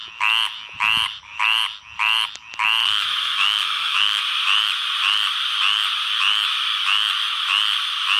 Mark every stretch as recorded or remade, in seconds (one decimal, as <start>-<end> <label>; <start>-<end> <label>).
0.0-2.8 recorded; 2.8-4.2 remade; 4.2-8.2 recorded